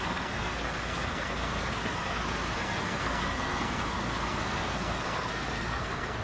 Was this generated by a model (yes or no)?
yes